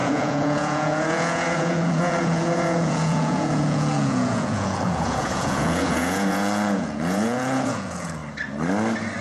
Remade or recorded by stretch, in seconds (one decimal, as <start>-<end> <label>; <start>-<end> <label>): 0.0-8.2 remade; 8.2-9.2 recorded